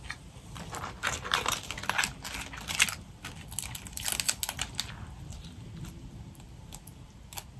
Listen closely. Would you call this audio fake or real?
real